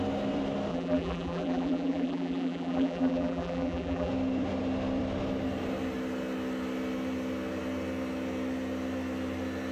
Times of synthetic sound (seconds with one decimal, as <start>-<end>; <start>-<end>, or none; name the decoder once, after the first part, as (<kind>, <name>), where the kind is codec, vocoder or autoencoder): 0.7-4.1 (vocoder, BigVGAN v2)